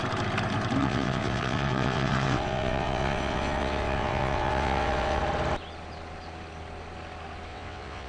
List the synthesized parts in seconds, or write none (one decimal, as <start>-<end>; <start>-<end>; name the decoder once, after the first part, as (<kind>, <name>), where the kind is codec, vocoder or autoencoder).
0.8-5.2 (vocoder, WaveNeXt); 7.5-8.1